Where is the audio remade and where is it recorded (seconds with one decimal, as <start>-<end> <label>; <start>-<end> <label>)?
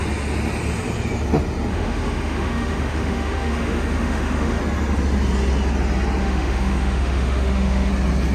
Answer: 0.0-1.7 recorded; 1.7-4.6 remade; 4.6-6.2 recorded; 6.2-7.9 remade; 7.9-8.3 recorded